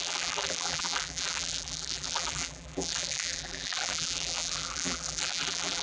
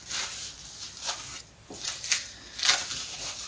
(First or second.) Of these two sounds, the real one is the second